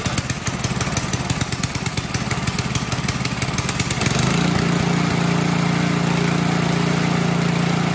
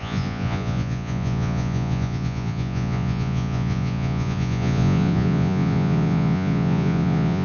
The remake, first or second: second